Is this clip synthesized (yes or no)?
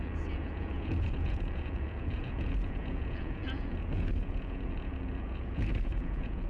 yes